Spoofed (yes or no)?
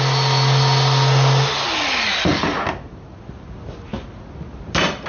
no